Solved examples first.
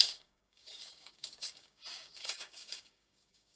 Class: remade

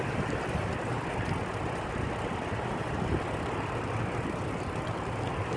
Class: recorded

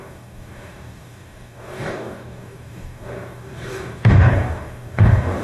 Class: remade